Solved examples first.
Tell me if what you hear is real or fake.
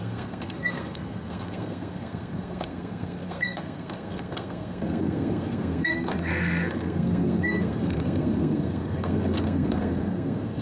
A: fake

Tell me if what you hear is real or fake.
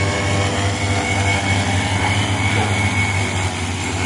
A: real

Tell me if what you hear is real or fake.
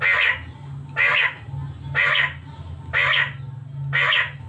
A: real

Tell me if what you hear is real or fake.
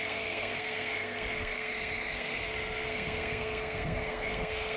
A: fake